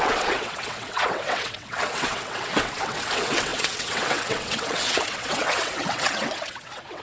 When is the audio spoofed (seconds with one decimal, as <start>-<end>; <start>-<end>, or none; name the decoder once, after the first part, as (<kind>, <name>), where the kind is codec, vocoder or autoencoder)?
0.0-7.0 (vocoder, WaveNeXt)